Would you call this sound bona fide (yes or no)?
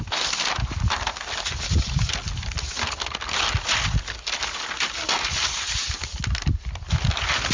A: yes